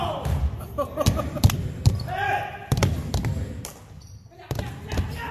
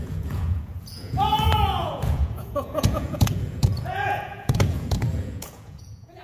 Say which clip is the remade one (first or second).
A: second